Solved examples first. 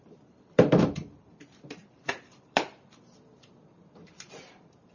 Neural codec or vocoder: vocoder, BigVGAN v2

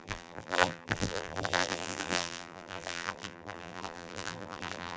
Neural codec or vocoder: vocoder, BigVGAN v2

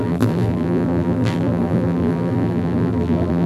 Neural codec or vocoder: vocoder, BigVGAN v2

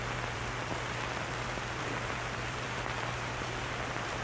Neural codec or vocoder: vocoder, BigVGAN v2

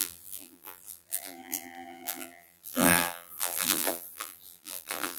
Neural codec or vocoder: vocoder, BigVGAN v2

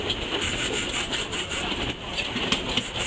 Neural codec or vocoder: none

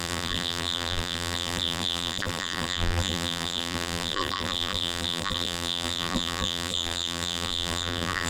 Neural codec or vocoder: vocoder, BigVGAN v2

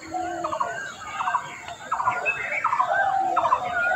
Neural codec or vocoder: vocoder, BigVGAN v2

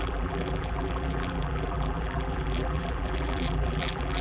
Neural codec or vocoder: vocoder, BigVGAN v2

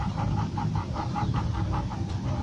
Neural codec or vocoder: vocoder, BigVGAN v2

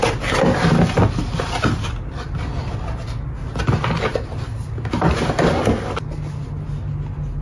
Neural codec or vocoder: none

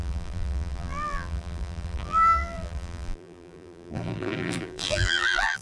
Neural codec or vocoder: vocoder, BigVGAN v2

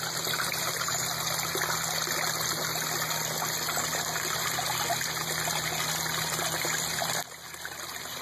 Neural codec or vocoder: none